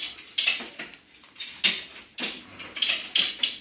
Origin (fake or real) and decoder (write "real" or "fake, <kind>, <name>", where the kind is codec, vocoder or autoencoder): real